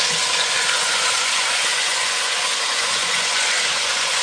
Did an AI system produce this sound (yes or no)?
yes